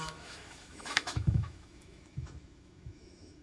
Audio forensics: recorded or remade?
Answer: remade